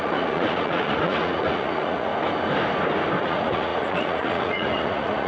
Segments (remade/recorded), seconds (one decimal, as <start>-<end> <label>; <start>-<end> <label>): 0.0-2.1 remade; 2.1-3.2 recorded; 3.2-5.3 remade